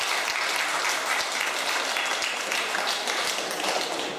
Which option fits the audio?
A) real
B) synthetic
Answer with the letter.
A